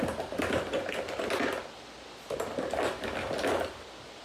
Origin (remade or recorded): remade